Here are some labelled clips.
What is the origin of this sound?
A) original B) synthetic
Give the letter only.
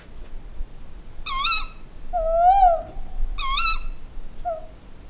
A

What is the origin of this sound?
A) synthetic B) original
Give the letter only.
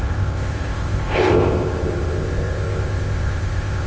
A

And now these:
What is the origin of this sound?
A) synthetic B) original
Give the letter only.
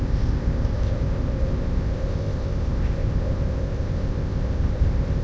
A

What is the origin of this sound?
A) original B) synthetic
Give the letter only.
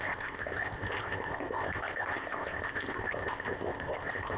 B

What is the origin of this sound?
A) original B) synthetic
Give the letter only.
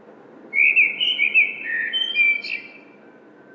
A